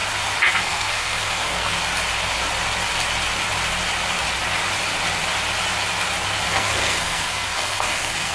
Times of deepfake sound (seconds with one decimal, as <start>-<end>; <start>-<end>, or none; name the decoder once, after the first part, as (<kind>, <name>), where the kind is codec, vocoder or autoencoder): 0.5-1.8 (codec, SNAC); 6.5-8.3